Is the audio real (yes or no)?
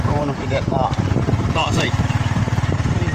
no